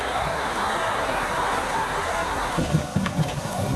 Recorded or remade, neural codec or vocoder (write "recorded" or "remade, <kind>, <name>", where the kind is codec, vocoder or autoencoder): remade, codec, SNAC